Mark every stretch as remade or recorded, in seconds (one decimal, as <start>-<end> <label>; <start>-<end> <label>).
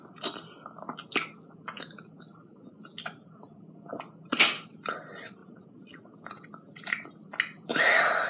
0.0-5.4 recorded; 5.4-6.1 remade; 6.1-8.3 recorded